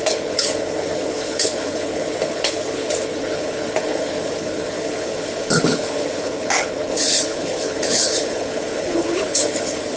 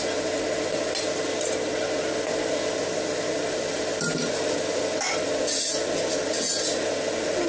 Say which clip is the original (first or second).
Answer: second